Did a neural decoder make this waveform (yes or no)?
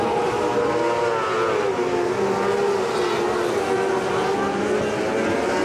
no